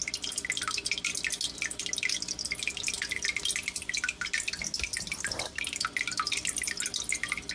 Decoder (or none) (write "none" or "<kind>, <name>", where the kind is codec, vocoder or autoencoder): none